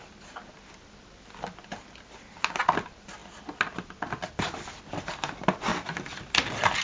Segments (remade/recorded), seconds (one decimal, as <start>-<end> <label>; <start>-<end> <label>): 0.0-6.8 recorded